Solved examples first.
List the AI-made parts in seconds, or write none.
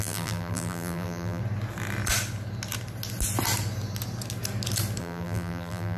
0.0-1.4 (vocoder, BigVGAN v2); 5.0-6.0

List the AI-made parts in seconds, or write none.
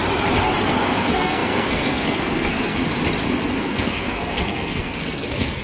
0.7-2.8 (codec, SNAC); 3.6-5.6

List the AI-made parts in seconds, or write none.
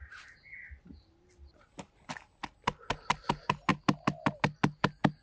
none